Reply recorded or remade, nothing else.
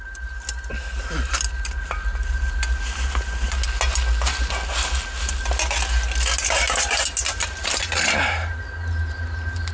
recorded